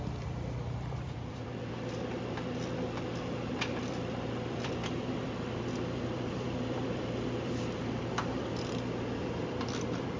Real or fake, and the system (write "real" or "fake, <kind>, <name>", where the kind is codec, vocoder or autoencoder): fake, vocoder, BigVGAN v2